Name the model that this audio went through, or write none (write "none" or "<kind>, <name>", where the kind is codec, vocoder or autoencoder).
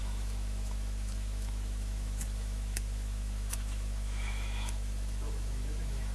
autoencoder, DAC-VAE